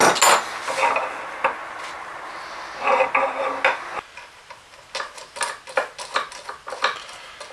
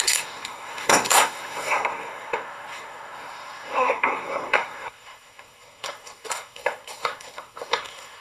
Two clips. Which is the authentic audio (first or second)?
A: first